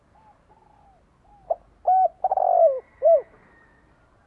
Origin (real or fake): real